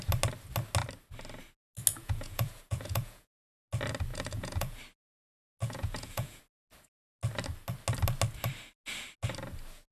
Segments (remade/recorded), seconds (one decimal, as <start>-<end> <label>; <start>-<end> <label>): 0.0-1.9 recorded; 1.9-3.4 remade; 3.4-4.1 recorded; 4.1-4.8 remade; 4.8-5.6 recorded; 5.6-6.4 remade; 6.4-9.9 recorded